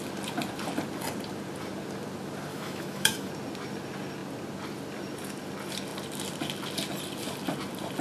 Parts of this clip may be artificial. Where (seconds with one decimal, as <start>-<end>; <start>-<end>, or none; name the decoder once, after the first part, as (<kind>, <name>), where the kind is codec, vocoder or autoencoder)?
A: 2.5-3.3 (autoencoder, DAC-VAE)